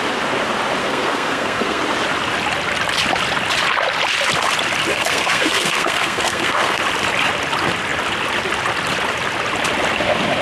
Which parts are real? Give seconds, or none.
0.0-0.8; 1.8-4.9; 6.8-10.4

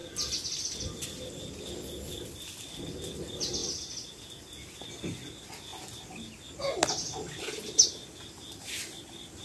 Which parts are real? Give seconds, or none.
0.0-9.4

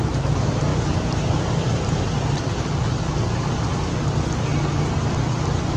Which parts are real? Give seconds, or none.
0.7-1.3; 2.5-5.8

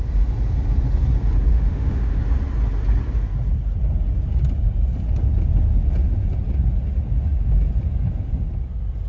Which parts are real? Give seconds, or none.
0.0-1.5; 2.2-9.1

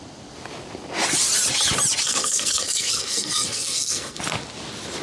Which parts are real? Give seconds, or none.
0.0-2.0; 4.2-5.0

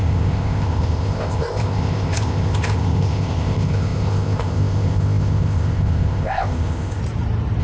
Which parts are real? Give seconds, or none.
7.0-7.6

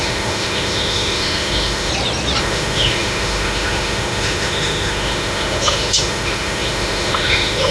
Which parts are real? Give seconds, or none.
1.9-2.4